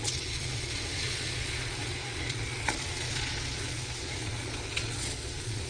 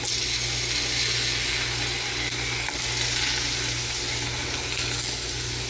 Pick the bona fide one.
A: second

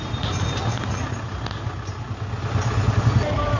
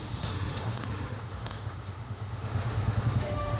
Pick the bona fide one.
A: first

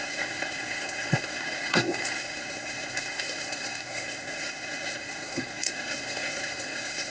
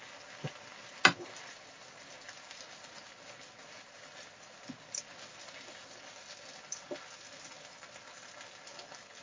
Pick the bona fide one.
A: second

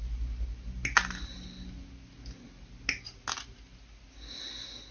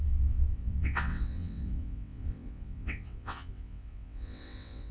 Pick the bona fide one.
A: first